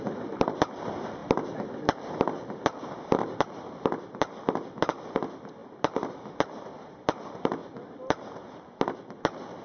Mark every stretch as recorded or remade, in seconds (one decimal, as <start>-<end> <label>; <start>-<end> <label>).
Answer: 0.0-9.6 recorded